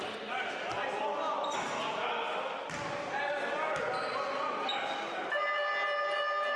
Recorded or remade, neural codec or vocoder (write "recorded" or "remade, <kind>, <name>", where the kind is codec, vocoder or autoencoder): recorded